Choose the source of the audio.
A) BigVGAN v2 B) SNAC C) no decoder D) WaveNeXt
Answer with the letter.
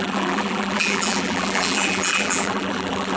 A